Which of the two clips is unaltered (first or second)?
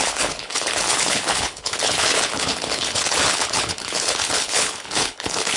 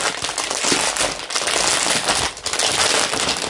second